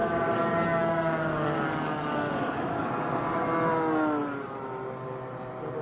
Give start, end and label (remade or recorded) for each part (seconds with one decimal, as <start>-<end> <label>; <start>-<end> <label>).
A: 0.0-3.5 remade; 3.5-5.8 recorded